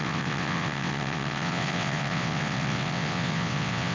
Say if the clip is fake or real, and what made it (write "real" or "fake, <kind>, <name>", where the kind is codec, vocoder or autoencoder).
fake, vocoder, WaveNeXt